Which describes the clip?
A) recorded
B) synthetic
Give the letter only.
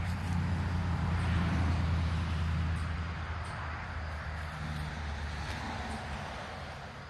A